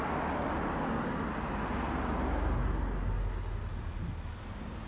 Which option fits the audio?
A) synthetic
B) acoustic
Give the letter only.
B